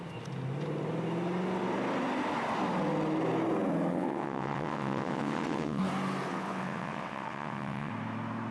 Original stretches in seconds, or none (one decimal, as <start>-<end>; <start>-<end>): 0.0-3.9; 5.8-6.3; 7.9-8.5